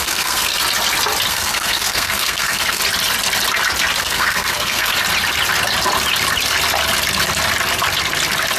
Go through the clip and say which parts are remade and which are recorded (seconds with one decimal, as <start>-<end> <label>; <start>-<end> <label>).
0.0-0.5 remade; 0.5-1.3 recorded; 1.3-2.8 remade; 2.8-4.0 recorded; 4.0-4.9 remade; 4.9-8.6 recorded

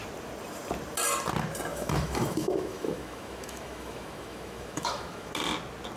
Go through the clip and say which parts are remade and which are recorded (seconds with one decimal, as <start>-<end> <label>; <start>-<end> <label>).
0.0-1.7 recorded; 1.7-5.3 remade; 5.3-6.0 recorded